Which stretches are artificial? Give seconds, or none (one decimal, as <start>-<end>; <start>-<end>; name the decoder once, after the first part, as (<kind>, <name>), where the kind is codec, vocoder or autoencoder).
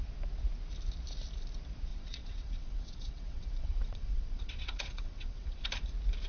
1.9-5.7 (vocoder, WaveNeXt)